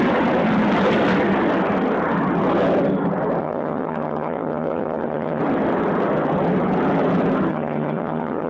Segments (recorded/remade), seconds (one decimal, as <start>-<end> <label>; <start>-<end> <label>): 0.0-3.4 recorded; 3.4-5.4 remade; 5.4-7.5 recorded; 7.5-8.5 remade